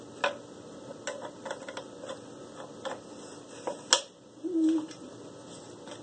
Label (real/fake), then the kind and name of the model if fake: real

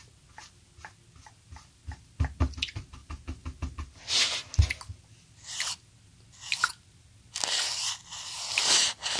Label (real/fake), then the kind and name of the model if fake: real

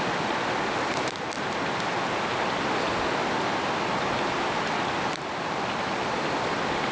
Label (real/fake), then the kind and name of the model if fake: real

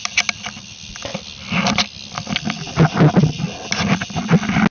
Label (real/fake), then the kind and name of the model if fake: real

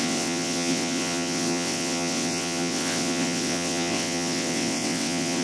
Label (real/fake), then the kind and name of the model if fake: fake, vocoder, WaveNeXt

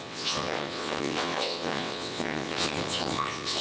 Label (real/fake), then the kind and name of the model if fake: fake, vocoder, WaveNeXt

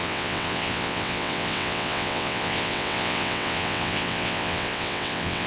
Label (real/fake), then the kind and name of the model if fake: fake, vocoder, WaveNeXt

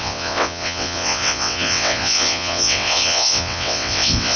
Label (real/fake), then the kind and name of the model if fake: fake, vocoder, WaveNeXt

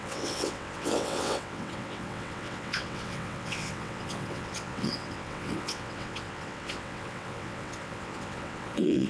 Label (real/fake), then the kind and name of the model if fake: fake, vocoder, WaveNeXt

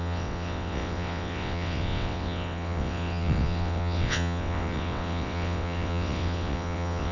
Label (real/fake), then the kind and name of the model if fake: fake, vocoder, WaveNeXt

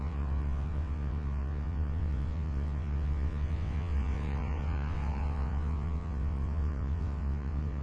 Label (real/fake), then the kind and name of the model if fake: fake, vocoder, WaveNeXt